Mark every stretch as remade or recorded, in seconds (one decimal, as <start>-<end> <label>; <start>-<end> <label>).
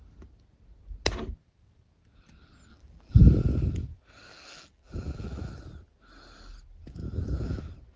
0.0-2.7 recorded; 2.7-3.2 remade; 3.2-4.3 recorded; 4.3-5.5 remade; 5.5-7.0 recorded; 7.0-7.6 remade; 7.6-8.0 recorded